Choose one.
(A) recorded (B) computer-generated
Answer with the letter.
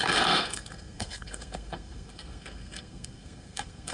B